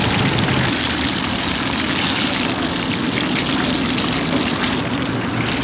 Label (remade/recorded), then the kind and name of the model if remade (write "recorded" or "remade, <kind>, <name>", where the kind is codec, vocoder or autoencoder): recorded